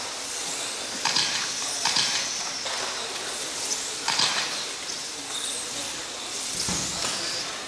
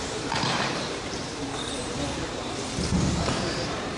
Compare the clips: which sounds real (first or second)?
first